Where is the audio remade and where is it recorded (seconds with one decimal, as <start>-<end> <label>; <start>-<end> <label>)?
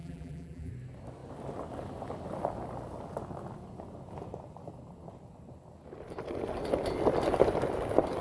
0.0-0.7 remade; 0.7-8.2 recorded